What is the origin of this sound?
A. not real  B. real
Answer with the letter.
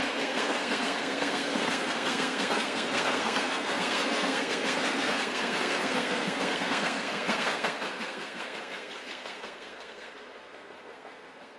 A